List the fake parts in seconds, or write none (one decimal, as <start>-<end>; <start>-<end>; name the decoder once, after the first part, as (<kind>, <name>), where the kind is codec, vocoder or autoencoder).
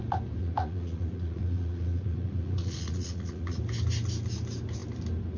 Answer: 0.4-3.6 (vocoder, Vocos)